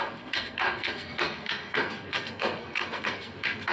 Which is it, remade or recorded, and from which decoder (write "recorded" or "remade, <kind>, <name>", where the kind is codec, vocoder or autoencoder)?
remade, codec, SNAC